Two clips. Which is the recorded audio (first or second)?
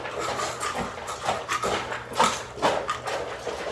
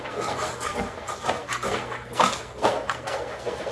first